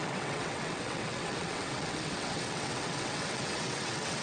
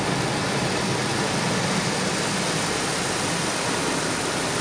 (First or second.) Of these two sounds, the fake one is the first